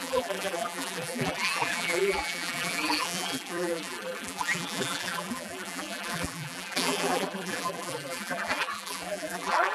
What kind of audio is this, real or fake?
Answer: fake